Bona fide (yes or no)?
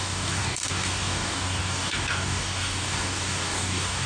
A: no